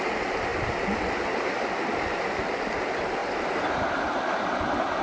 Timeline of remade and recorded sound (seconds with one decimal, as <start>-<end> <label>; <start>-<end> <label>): 0.0-5.0 recorded